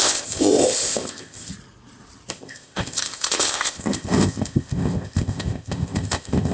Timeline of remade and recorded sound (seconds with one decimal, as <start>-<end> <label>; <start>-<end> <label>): 0.0-1.5 remade; 1.5-2.3 recorded; 2.3-6.5 remade